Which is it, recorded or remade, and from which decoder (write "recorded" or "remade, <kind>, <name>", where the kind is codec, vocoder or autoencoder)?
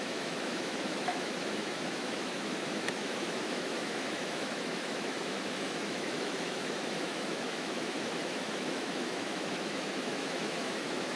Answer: remade, autoencoder, DAC-VAE